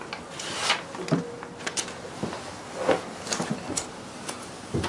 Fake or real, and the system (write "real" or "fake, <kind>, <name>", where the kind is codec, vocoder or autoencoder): real